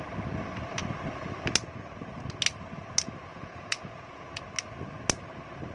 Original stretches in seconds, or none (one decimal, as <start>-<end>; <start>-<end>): 0.0-3.3; 4.4-5.7